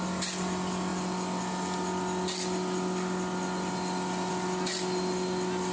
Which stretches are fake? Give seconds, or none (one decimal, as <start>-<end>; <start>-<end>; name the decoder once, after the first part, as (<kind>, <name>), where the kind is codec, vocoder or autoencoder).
none